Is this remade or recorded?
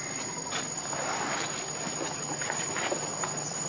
recorded